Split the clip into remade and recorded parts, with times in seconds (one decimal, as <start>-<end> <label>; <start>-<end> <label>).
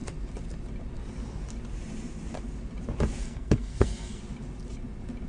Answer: 0.0-3.2 recorded; 3.2-4.2 remade; 4.2-5.3 recorded